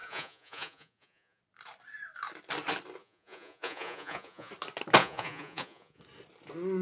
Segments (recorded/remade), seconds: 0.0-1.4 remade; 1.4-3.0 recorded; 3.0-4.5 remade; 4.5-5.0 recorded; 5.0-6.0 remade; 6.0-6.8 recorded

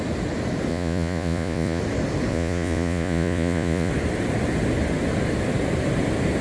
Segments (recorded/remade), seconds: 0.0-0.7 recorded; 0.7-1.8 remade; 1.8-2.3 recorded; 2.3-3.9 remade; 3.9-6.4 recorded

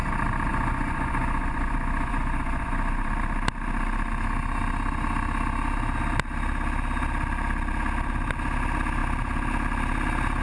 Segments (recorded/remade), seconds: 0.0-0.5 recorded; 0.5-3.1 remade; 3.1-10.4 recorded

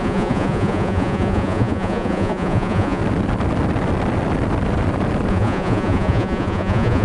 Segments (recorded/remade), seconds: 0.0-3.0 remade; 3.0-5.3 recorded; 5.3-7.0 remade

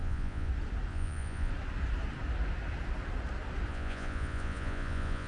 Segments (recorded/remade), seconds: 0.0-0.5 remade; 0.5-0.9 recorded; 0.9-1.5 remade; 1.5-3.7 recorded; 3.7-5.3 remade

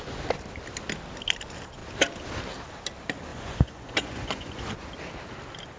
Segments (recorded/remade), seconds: 0.0-3.3 recorded; 3.3-4.6 remade; 4.6-5.8 recorded

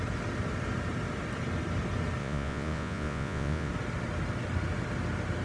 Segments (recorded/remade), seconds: 0.0-2.2 recorded; 2.2-3.7 remade; 3.7-5.4 recorded